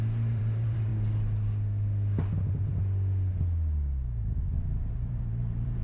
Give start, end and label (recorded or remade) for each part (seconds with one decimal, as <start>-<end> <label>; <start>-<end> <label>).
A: 0.0-0.9 remade; 0.9-4.4 recorded; 4.4-5.8 remade